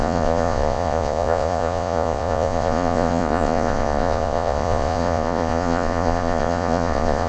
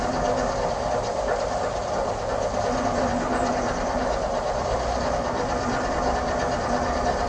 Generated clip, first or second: first